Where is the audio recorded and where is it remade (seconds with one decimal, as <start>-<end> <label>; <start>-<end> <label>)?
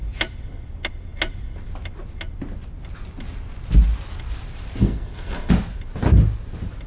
0.0-4.8 recorded; 4.8-5.5 remade; 5.5-6.9 recorded